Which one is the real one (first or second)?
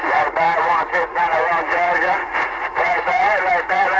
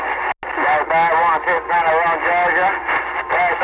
second